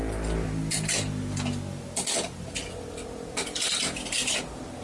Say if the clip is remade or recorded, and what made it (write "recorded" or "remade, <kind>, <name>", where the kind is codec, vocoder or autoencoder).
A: recorded